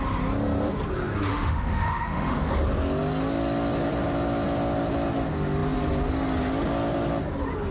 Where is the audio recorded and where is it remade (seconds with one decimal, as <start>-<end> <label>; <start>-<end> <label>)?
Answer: 0.0-1.3 recorded; 1.3-2.5 remade; 2.5-7.7 recorded

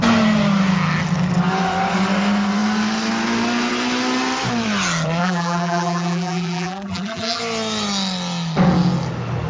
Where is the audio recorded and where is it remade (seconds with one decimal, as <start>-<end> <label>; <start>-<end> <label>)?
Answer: 0.0-5.2 recorded; 5.2-7.4 remade; 7.4-9.5 recorded

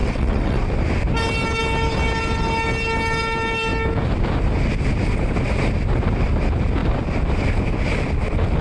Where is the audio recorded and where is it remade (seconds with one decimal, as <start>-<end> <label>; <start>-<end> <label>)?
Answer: 0.0-0.6 remade; 0.6-8.6 recorded

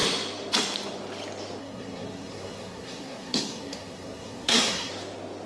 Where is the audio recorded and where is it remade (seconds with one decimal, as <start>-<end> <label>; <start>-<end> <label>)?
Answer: 0.0-1.6 recorded; 1.6-4.9 remade; 4.9-5.5 recorded